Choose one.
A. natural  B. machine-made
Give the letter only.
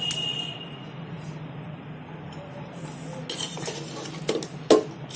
A